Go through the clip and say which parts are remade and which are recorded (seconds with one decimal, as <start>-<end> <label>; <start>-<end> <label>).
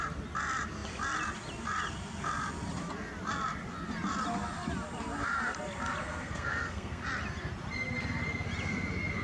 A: 0.0-6.0 recorded; 6.0-7.0 remade; 7.0-9.2 recorded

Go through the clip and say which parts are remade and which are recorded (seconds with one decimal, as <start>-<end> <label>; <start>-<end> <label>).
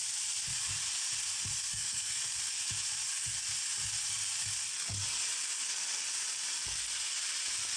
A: 0.0-1.7 recorded; 1.7-2.2 remade; 2.2-7.8 recorded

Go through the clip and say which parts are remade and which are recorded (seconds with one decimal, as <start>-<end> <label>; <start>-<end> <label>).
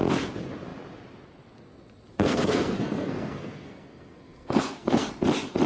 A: 0.0-2.1 recorded; 2.1-5.1 remade; 5.1-5.7 recorded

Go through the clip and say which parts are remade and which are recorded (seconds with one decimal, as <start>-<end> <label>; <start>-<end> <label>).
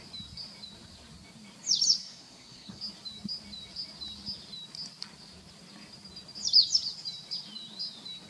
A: 0.0-2.0 recorded; 2.0-2.8 remade; 2.8-8.3 recorded